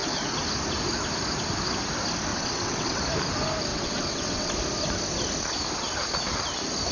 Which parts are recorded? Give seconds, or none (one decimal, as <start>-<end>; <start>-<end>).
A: 0.0-2.3; 3.0-3.7; 4.5-6.9